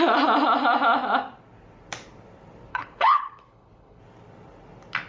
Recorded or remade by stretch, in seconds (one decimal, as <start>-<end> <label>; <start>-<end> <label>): 0.0-2.7 recorded; 2.7-4.0 remade; 4.0-5.1 recorded